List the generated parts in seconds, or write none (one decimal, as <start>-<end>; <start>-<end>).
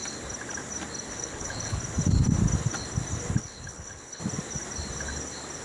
1.1-1.8; 3.4-4.2